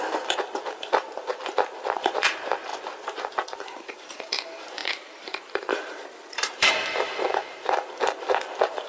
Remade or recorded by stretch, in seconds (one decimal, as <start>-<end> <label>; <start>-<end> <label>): 0.0-8.9 remade